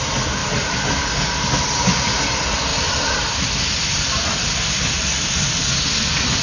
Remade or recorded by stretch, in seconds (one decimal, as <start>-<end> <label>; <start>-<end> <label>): 0.0-2.7 recorded; 2.7-5.5 remade; 5.5-6.4 recorded